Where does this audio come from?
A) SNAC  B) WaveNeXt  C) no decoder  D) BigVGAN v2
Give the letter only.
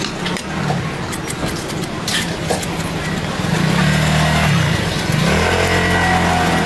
C